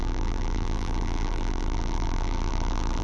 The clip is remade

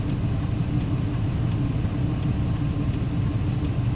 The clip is recorded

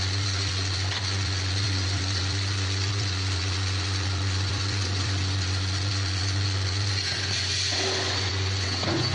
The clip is remade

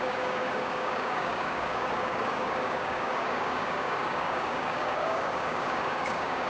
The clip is remade